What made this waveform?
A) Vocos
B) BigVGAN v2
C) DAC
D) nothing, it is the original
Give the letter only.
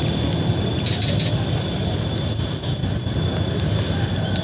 D